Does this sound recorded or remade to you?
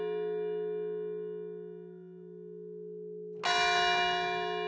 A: recorded